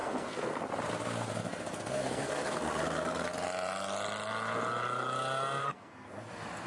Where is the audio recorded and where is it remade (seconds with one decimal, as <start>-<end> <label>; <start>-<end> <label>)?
0.0-0.7 remade; 0.7-1.4 recorded; 1.4-2.7 remade; 2.7-5.6 recorded; 5.6-6.3 remade; 6.3-6.7 recorded